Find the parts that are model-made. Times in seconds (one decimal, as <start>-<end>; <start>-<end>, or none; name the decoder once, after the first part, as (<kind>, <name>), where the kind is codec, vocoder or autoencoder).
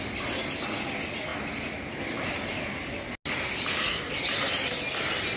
none